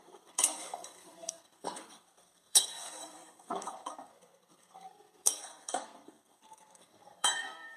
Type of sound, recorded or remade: remade